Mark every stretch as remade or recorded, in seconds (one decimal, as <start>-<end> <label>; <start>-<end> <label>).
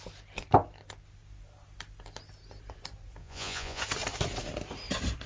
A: 0.0-3.2 recorded; 3.2-3.8 remade; 3.8-5.3 recorded